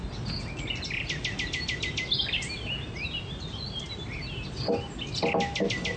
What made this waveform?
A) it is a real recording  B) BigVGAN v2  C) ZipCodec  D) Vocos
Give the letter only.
A